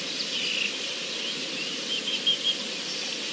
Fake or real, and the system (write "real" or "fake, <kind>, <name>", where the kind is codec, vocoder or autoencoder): real